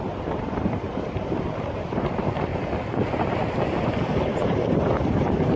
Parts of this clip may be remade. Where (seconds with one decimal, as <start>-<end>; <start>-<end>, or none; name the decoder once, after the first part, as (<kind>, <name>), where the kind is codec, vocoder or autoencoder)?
0.0-2.5 (vocoder, BigVGAN v2); 4.0-5.6